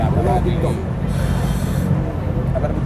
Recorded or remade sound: recorded